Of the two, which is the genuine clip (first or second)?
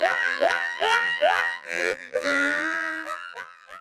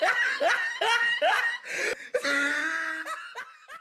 second